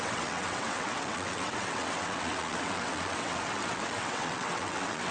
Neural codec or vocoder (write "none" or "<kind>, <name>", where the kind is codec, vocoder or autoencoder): vocoder, WaveNeXt